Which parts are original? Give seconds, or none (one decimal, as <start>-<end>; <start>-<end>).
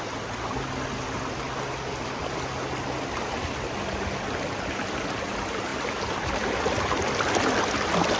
0.0-8.2